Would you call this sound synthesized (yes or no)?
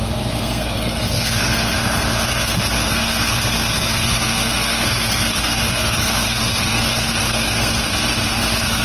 yes